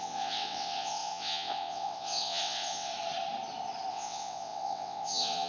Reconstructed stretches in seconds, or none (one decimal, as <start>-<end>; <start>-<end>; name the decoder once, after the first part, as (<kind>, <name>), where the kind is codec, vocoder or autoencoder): 0.0-2.9 (vocoder, WaveNeXt); 3.9-5.5

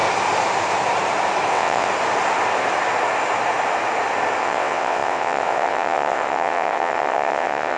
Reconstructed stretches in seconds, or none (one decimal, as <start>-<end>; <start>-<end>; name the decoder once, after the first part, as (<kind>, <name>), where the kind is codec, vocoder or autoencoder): 1.5-1.9 (vocoder, WaveNeXt); 4.4-7.8

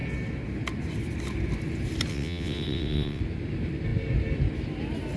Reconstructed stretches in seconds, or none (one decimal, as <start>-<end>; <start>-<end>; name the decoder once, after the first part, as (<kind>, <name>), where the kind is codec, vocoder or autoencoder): 2.1-3.2 (vocoder, WaveNeXt)

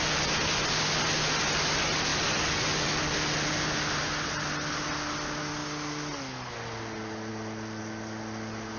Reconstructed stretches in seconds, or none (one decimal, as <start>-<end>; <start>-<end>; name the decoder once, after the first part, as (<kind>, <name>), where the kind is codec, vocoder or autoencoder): none

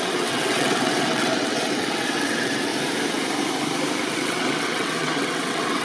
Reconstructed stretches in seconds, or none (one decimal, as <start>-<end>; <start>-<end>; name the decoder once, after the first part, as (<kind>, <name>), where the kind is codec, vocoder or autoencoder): 0.0-2.7 (vocoder, WaveNeXt); 4.1-5.8

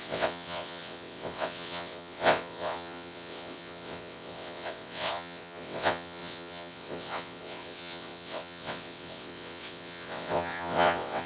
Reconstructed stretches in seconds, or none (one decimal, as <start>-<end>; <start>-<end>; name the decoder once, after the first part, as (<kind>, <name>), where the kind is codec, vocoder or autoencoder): 0.0-11.3 (vocoder, WaveNeXt)

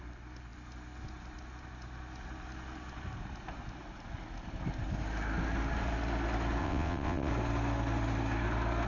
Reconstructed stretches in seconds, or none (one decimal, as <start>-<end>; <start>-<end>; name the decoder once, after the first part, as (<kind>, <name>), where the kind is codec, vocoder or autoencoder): 6.6-7.3 (vocoder, WaveNeXt)